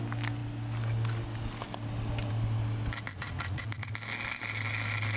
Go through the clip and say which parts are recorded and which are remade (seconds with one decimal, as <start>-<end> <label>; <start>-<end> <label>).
0.0-3.1 recorded; 3.1-3.9 remade; 3.9-5.2 recorded